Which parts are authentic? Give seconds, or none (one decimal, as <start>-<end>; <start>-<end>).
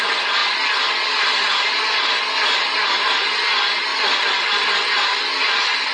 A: 0.0-5.9